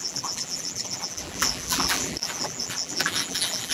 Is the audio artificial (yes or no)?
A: yes